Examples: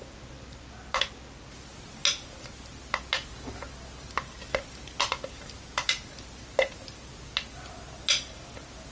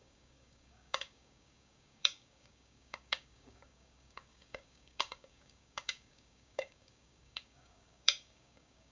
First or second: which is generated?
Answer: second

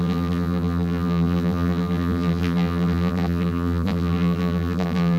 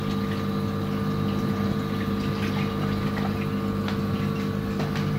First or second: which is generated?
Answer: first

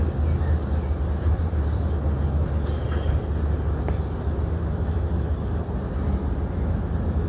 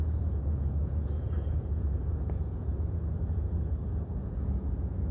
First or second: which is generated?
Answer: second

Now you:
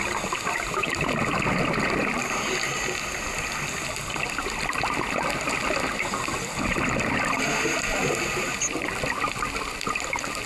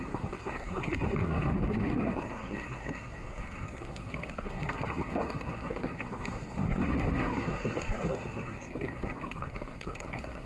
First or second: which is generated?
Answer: second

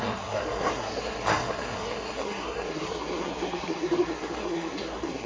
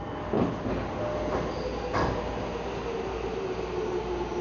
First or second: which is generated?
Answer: first